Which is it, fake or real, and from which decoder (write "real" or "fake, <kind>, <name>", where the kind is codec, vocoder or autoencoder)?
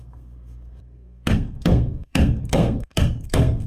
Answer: fake, codec, SNAC